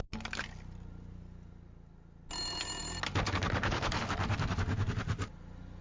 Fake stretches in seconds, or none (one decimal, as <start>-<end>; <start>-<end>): none